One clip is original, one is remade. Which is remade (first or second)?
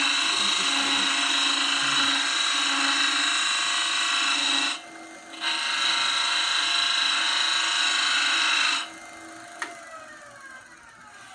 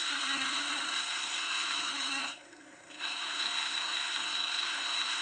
second